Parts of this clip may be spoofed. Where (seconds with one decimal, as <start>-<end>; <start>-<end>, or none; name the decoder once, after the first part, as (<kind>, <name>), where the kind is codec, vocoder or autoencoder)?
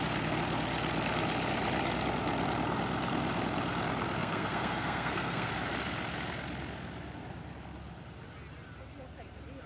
4.2-5.5 (codec, SNAC)